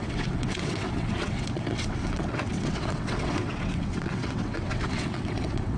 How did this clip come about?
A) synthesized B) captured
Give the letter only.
A